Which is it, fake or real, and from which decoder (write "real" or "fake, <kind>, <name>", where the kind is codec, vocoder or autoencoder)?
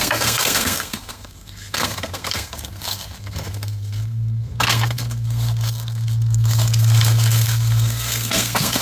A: fake, codec, SNAC